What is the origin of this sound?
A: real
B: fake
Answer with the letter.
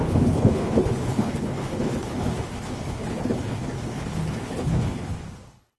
B